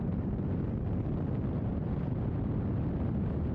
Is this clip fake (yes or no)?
no